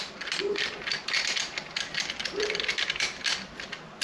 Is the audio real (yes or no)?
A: yes